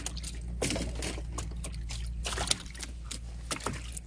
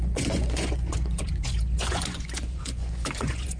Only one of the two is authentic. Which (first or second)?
first